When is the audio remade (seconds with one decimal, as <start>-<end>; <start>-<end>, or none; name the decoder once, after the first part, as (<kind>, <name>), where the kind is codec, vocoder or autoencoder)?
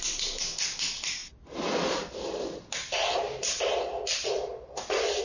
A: none